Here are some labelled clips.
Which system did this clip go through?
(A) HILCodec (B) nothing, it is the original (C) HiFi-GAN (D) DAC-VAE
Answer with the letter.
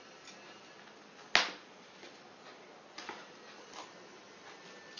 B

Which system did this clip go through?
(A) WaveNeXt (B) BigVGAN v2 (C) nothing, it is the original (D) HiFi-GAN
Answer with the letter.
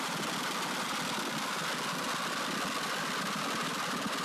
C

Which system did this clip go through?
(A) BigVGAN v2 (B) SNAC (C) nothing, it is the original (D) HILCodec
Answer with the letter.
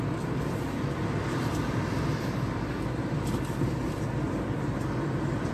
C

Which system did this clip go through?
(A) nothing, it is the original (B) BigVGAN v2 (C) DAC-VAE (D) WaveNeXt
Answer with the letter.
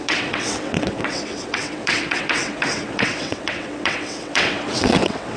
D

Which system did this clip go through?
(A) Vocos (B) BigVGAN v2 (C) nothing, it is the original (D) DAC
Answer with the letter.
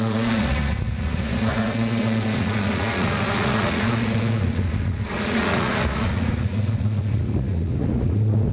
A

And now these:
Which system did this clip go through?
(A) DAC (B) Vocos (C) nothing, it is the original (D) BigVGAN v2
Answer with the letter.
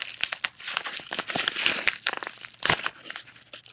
C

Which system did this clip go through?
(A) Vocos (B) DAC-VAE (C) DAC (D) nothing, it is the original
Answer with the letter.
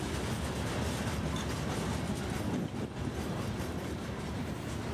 D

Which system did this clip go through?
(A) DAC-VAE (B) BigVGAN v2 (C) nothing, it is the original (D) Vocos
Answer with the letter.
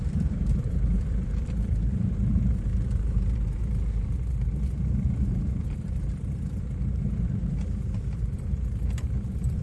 B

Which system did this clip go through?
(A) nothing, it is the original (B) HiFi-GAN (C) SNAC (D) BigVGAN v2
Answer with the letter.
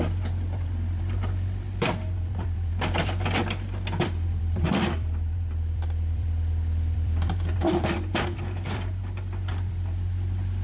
D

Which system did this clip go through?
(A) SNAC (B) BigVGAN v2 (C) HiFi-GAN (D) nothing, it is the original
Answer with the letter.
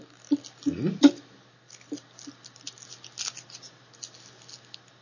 D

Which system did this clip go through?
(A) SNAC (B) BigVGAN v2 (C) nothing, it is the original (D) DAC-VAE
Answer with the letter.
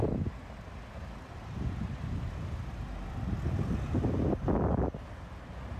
C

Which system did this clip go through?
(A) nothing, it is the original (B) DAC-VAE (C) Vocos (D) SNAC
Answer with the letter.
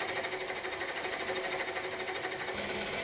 A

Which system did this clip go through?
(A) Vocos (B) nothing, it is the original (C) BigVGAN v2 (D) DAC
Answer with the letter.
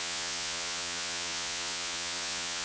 A